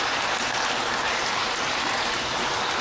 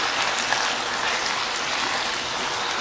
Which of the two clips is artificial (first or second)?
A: first